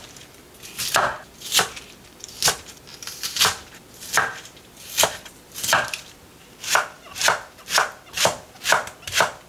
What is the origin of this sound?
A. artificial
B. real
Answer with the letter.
A